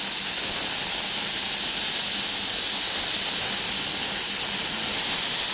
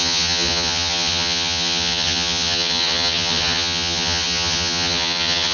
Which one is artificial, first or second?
second